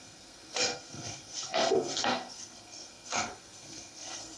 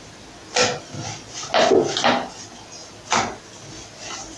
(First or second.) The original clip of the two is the second